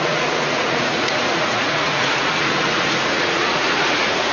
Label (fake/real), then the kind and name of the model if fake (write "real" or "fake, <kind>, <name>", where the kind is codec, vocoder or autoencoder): fake, vocoder, Vocos